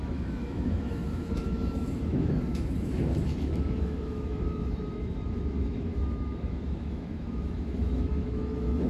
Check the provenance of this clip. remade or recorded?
remade